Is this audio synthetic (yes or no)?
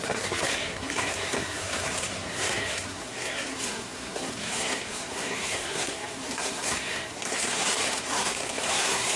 yes